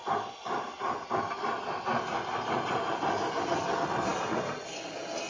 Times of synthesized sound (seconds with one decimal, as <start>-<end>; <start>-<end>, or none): none